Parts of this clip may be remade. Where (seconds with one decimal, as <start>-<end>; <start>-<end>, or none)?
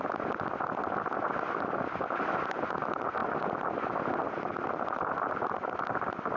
none